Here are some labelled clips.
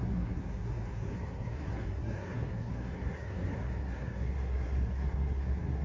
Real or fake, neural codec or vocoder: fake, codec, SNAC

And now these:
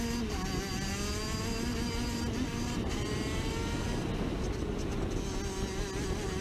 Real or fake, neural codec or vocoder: real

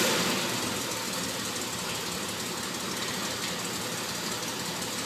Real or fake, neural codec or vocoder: real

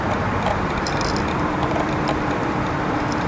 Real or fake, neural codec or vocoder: fake, vocoder, BigVGAN v2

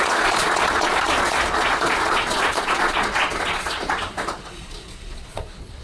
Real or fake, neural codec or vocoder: fake, vocoder, Vocos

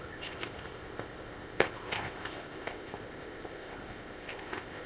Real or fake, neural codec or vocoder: fake, codec, ZipCodec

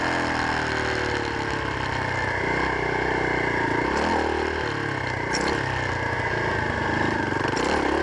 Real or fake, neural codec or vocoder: real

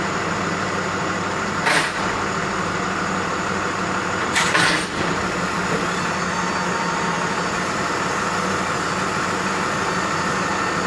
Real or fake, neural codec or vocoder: real